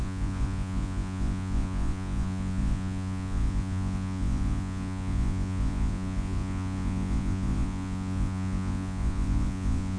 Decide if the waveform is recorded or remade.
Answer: remade